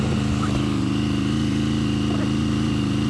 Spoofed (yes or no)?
no